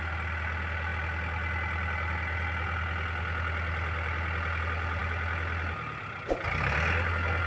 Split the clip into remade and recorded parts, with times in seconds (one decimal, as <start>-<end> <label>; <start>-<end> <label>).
0.0-7.5 recorded